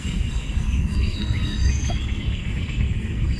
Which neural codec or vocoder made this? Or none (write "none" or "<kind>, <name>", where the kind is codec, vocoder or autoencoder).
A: codec, SNAC